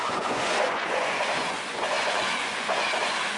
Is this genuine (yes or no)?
no